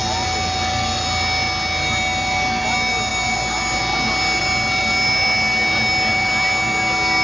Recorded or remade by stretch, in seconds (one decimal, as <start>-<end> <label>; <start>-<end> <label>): 0.0-7.2 recorded